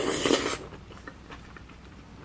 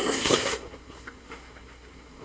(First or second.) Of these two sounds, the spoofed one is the second